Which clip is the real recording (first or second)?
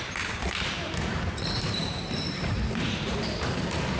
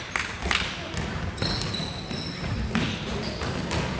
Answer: second